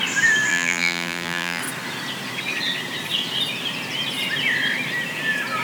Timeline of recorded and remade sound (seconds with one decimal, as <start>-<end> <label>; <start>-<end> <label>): 0.0-0.5 recorded; 0.5-1.6 remade; 1.6-5.6 recorded